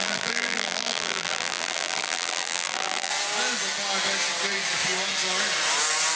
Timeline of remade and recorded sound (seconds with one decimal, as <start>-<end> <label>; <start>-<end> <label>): 0.0-3.1 remade; 3.1-6.2 recorded